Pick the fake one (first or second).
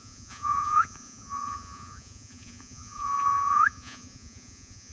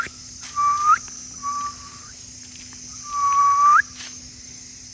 first